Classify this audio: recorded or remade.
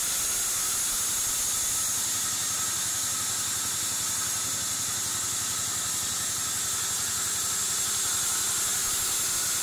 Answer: recorded